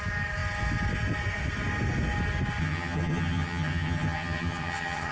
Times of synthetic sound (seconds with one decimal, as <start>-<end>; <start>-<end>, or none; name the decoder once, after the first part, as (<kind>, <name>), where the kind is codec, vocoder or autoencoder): 2.6-5.1 (vocoder, HiFi-GAN)